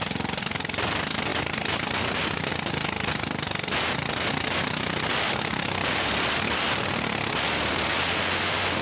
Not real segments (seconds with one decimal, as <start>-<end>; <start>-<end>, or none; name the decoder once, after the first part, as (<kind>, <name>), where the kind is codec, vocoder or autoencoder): none